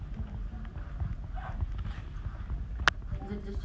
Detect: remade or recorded recorded